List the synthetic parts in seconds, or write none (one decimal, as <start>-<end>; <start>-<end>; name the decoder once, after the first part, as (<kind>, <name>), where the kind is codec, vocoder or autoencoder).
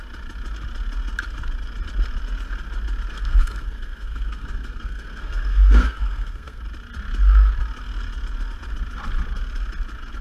3.1-6.6 (codec, SNAC)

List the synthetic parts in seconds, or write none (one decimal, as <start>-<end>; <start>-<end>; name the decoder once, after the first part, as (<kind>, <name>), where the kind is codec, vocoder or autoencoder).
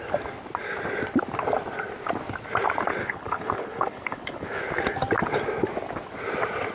3.0-4.6 (codec, HILCodec)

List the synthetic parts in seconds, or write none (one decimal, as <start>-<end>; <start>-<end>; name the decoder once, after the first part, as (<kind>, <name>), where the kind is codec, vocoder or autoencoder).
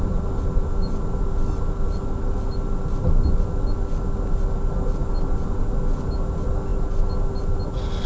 none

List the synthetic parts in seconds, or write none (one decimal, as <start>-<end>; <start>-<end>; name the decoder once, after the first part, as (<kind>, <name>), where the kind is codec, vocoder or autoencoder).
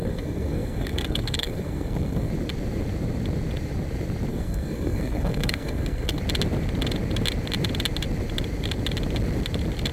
0.0-2.3 (codec, SNAC); 4.3-6.2